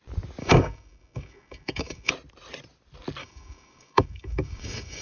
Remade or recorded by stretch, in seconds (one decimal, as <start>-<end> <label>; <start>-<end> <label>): 0.0-0.4 recorded; 0.4-2.1 remade; 2.1-3.2 recorded; 3.2-5.0 remade